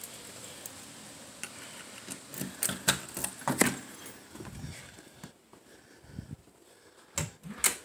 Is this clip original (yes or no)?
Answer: yes